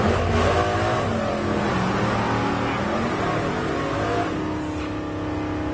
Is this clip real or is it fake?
real